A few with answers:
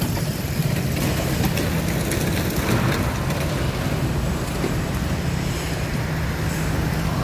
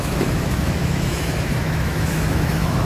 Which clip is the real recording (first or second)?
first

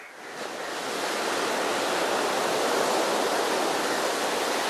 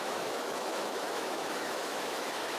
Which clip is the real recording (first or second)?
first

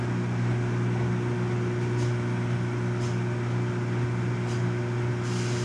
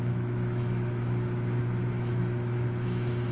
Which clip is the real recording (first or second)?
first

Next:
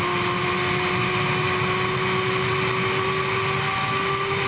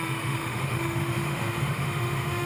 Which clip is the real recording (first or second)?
first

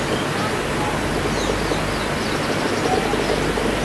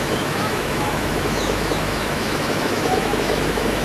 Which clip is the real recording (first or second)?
first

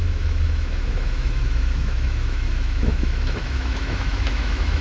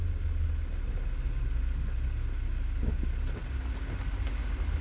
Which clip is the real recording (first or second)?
second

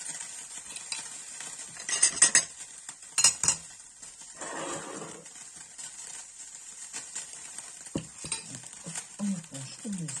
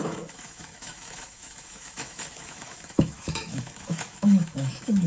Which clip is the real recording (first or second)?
first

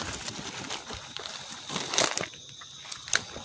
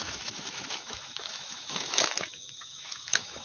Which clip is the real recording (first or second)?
first